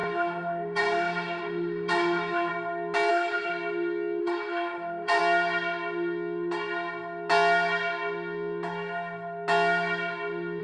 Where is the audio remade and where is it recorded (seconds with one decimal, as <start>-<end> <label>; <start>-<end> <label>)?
0.0-2.5 remade; 2.5-3.1 recorded; 3.1-3.5 remade; 3.5-4.2 recorded; 4.2-5.2 remade; 5.2-10.6 recorded